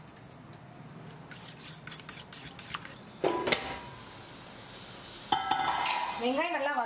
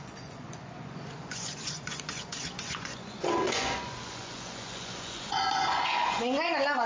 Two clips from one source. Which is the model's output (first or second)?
second